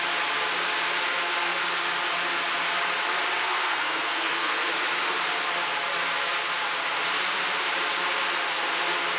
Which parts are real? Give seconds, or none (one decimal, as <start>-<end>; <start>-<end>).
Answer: 0.0-1.1; 1.6-3.4; 4.6-9.2